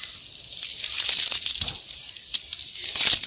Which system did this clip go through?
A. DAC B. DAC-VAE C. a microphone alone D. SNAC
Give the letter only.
C